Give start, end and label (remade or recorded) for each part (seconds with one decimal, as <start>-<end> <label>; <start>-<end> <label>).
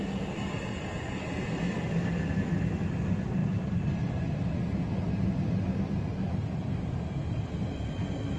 0.0-8.4 recorded